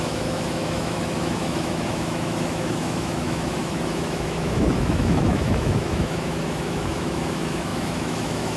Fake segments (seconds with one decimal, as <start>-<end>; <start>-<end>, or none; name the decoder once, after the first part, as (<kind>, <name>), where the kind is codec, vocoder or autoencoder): 0.0-8.6 (autoencoder, DAC-VAE)